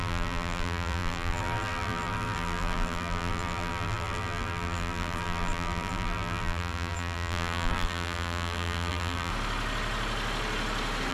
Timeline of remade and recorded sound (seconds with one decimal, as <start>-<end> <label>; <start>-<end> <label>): 0.0-9.3 remade; 9.3-11.1 recorded